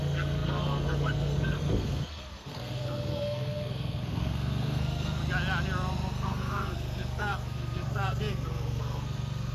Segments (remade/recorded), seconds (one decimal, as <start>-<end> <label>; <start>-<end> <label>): 0.0-5.2 remade; 5.2-6.1 recorded; 6.1-9.5 remade